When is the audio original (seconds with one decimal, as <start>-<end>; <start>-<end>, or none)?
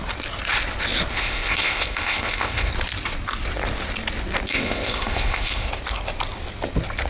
0.0-1.1; 2.7-4.5; 5.7-7.1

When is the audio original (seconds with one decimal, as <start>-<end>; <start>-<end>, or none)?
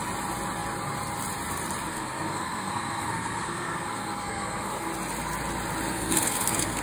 0.0-1.9; 4.9-5.9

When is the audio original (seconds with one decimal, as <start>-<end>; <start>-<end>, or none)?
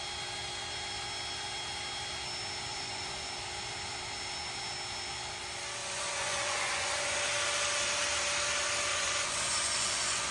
0.0-2.7; 3.3-5.8; 7.2-8.9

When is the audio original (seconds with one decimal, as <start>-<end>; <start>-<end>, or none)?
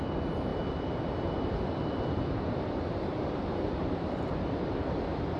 0.5-1.5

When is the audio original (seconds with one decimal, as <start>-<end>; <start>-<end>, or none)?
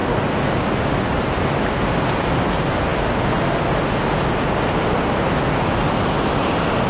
0.0-6.9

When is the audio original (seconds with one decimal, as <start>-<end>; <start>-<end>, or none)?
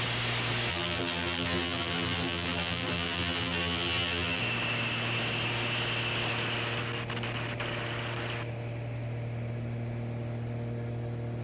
0.0-0.7; 4.4-11.4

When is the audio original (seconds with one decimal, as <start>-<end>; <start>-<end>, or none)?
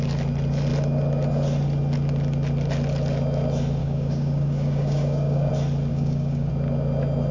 0.0-3.8; 5.5-5.9; 6.5-7.3